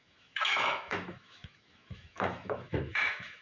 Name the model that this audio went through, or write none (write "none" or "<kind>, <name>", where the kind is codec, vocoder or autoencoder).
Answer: autoencoder, DAC-VAE